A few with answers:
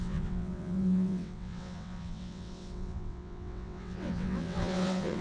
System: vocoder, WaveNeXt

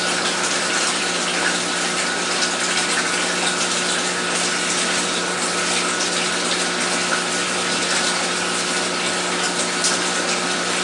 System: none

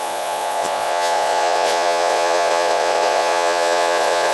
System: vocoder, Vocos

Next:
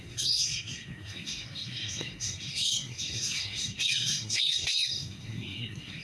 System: codec, SNAC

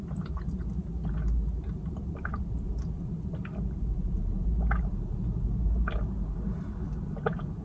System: none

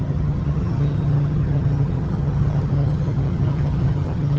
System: vocoder, HiFi-GAN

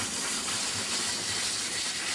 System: none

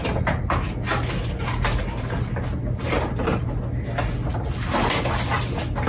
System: none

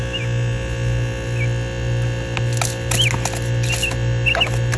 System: none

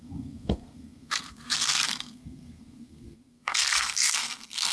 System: codec, SNAC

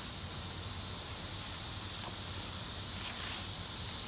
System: vocoder, BigVGAN v2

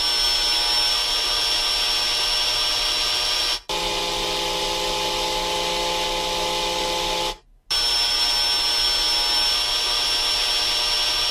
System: none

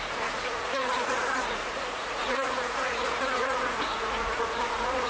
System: vocoder, Vocos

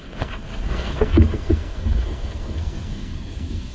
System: codec, SNAC